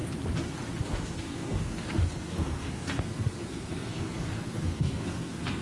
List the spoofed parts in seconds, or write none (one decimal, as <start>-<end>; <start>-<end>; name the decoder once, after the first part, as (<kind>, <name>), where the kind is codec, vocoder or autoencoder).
0.8-5.6 (codec, SNAC)